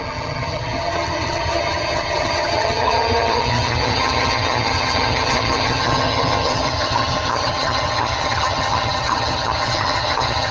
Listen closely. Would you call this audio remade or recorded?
remade